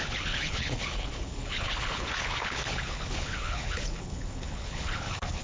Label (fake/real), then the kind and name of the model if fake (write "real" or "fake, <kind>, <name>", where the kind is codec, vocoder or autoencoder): fake, codec, HILCodec